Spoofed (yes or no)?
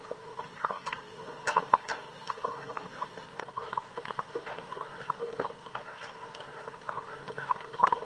yes